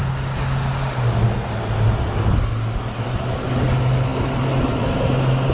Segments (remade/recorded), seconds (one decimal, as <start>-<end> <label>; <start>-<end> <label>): 0.0-5.5 recorded